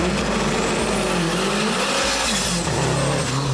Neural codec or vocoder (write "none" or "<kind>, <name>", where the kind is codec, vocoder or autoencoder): none